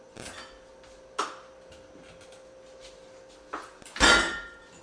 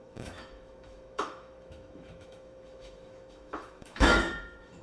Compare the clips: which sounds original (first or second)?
first